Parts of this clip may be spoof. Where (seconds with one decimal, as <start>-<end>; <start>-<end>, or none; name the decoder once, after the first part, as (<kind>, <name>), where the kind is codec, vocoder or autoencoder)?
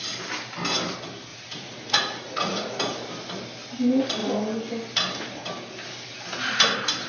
1.3-2.7 (vocoder, Vocos)